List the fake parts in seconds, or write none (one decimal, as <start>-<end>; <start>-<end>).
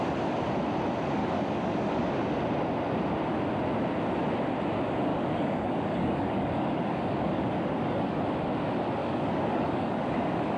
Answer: 1.2-2.2; 5.1-8.2; 9.0-10.6